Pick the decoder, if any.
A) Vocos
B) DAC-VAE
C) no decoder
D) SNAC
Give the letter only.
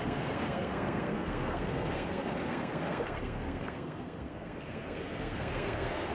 D